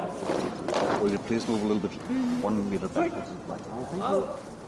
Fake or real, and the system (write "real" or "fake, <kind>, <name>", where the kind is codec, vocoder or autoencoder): real